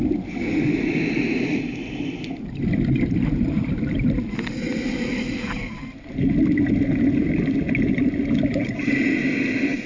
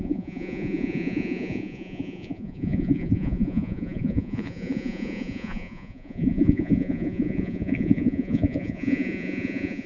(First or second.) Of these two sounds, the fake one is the second